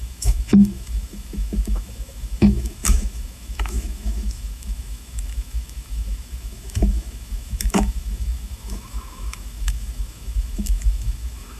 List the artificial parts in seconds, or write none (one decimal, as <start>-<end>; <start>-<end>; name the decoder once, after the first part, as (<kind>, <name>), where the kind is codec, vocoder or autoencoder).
0.0-11.6 (autoencoder, DAC-VAE)